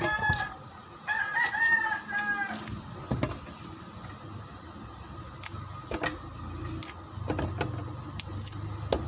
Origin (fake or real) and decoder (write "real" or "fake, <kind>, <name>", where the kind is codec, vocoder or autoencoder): real